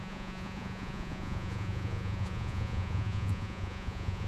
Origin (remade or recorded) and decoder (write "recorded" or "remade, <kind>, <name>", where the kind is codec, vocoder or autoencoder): remade, vocoder, Vocos